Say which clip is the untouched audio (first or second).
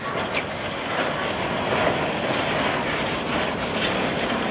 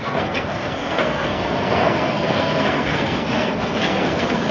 first